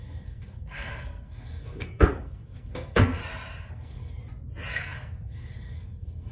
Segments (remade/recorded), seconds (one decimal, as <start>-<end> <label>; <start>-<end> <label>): 0.0-3.2 remade; 3.2-3.7 recorded; 3.7-4.2 remade; 4.2-4.7 recorded; 4.7-6.3 remade